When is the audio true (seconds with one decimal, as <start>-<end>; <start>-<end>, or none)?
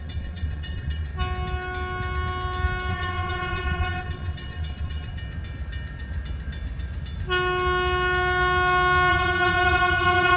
1.1-2.9; 5.1-9.1